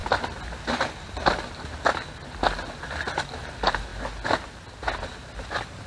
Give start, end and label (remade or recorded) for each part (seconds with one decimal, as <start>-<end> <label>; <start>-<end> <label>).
0.0-5.9 recorded